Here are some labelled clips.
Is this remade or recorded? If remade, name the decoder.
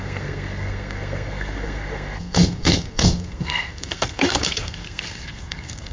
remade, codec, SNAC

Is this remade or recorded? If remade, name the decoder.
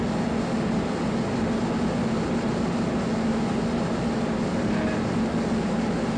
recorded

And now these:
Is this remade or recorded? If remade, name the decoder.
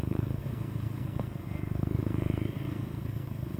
remade, codec, SNAC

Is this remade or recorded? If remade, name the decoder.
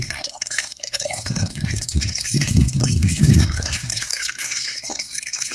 remade, codec, SNAC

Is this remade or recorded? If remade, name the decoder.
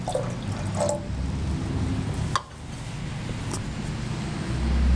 recorded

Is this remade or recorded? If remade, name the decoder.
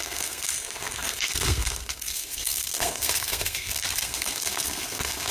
remade, codec, SNAC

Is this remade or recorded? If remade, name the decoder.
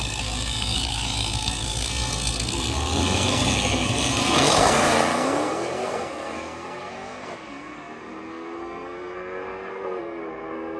remade, codec, SNAC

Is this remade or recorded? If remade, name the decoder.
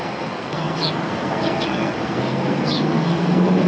remade, codec, SNAC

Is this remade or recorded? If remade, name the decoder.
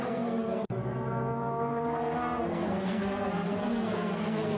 remade, codec, SNAC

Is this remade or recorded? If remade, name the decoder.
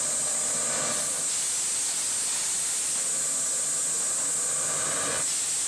recorded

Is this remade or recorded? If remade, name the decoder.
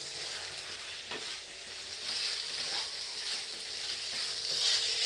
recorded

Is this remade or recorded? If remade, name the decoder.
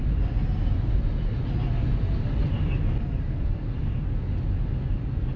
recorded